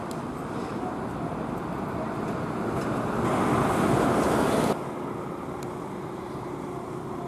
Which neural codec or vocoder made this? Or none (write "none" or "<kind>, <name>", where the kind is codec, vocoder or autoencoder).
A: none